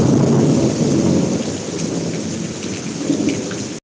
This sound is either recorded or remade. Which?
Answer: recorded